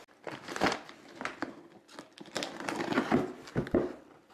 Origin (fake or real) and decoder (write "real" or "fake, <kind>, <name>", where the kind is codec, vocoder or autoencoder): real